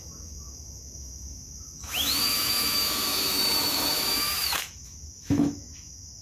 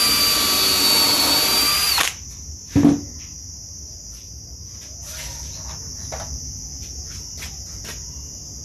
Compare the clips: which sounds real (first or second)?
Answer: second